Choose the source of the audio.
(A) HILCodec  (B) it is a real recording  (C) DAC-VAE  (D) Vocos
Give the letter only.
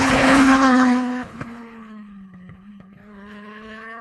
A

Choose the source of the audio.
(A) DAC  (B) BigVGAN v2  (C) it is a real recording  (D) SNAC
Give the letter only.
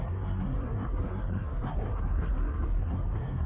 D